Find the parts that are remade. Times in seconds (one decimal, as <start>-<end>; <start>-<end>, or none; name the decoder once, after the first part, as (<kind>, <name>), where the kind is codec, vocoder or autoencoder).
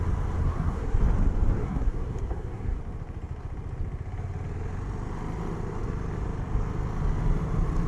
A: 0.4-1.0 (codec, SNAC); 1.6-2.8